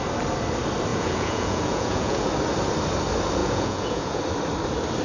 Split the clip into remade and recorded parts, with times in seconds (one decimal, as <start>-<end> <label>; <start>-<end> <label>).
0.0-0.9 recorded; 0.9-2.3 remade; 2.3-3.4 recorded; 3.4-4.2 remade; 4.2-5.0 recorded